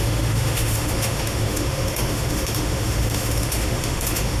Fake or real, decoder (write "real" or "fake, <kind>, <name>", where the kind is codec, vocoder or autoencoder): fake, autoencoder, DAC-VAE